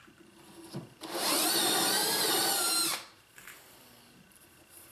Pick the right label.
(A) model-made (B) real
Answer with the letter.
A